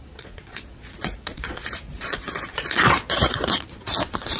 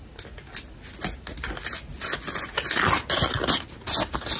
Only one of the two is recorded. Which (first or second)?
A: second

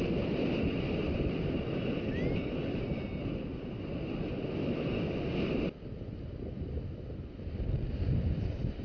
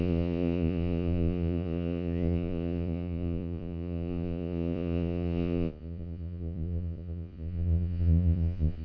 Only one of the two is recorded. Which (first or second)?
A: first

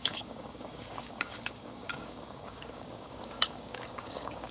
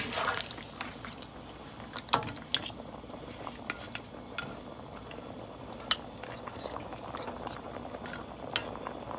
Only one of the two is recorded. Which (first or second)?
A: second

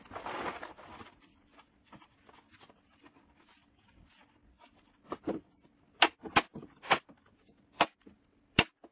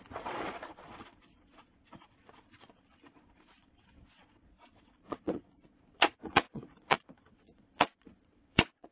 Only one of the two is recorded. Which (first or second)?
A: first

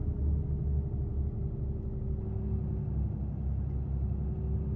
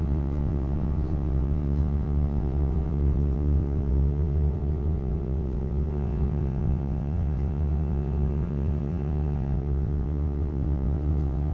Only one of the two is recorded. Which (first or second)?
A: first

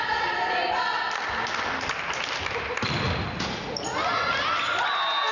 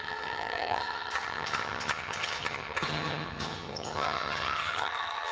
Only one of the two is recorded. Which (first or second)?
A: first